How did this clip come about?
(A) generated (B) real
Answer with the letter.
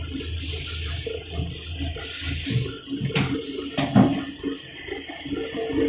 B